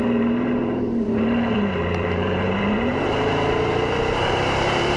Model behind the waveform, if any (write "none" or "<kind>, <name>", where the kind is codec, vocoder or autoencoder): vocoder, BigVGAN v2